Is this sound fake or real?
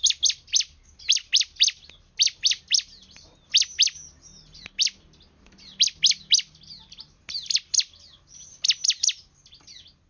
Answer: real